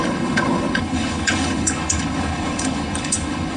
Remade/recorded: remade